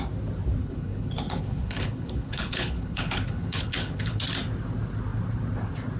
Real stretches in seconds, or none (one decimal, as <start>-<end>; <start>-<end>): 0.0-0.6; 4.2-6.0

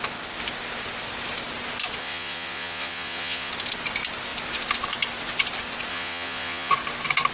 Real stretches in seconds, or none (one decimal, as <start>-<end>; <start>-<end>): 0.0-2.0; 3.5-5.9; 6.7-7.3

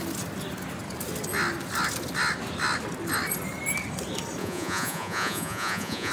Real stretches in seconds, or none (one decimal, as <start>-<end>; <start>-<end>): 0.0-4.4

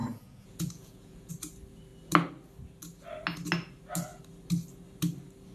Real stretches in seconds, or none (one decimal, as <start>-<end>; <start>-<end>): 1.3-5.5

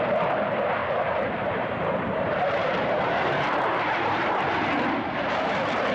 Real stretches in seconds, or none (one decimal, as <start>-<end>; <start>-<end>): 0.0-0.8; 4.2-5.9

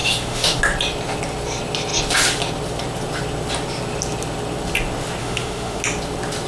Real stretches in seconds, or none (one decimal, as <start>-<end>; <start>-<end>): 0.6-5.2; 5.8-6.5

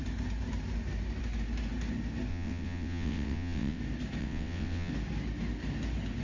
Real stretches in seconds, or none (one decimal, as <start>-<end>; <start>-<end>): 0.0-2.3; 3.8-4.2; 4.9-6.2